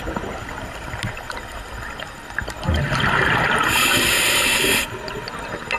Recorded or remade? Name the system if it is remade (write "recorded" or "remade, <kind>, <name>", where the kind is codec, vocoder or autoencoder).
recorded